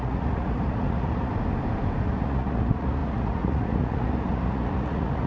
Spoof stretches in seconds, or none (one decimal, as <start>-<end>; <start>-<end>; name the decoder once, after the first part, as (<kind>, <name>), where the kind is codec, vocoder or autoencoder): 0.0-1.3 (vocoder, Vocos); 2.0-5.3